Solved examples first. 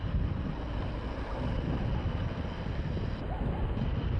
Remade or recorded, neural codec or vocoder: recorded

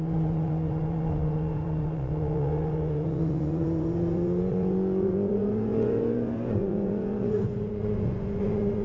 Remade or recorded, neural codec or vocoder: remade, vocoder, Vocos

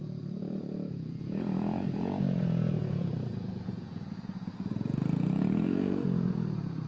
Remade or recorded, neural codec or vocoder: remade, vocoder, Vocos